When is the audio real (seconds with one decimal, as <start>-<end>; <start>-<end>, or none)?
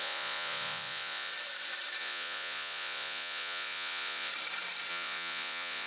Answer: 1.3-2.0; 4.3-4.9